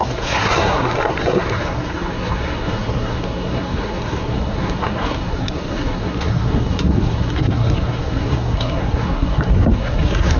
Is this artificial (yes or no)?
yes